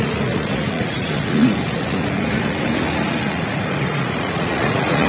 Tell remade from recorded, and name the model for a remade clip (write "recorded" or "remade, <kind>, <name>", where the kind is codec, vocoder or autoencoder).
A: remade, vocoder, Vocos